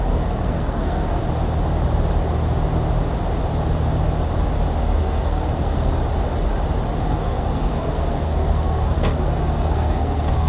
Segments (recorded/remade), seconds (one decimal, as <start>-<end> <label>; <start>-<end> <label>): 0.0-1.2 remade; 1.2-4.8 recorded; 4.8-6.0 remade; 6.0-7.0 recorded; 7.0-10.5 remade